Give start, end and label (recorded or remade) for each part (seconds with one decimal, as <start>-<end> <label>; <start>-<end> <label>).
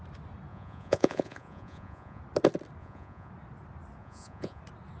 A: 0.0-0.5 recorded; 0.5-2.2 remade; 2.2-2.8 recorded; 2.8-3.3 remade; 3.3-4.0 recorded; 4.0-4.6 remade; 4.6-5.0 recorded